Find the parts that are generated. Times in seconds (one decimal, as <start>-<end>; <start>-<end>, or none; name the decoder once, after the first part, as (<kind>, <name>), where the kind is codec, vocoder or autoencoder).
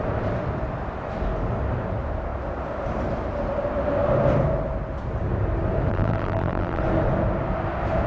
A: 5.9-6.8 (vocoder, BigVGAN v2)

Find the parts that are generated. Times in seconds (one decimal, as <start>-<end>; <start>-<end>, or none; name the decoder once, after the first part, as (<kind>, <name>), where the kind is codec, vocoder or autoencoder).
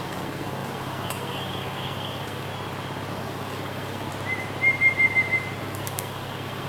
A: 0.0-2.5 (codec, SNAC); 3.1-4.1; 5.6-6.7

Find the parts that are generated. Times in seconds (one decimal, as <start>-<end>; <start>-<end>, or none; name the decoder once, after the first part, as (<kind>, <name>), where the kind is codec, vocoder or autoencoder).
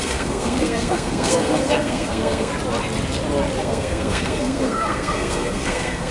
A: 0.0-2.5 (codec, SNAC); 3.6-6.1